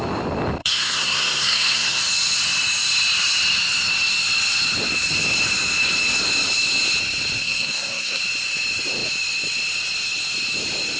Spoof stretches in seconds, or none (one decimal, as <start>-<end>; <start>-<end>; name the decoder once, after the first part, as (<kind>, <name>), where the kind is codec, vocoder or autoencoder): 0.6-2.0 (codec, SNAC); 7.4-8.2